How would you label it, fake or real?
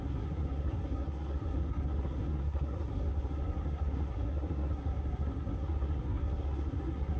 fake